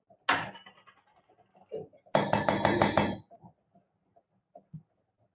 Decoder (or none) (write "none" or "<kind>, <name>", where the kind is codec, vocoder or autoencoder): none